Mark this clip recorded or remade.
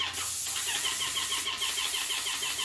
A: recorded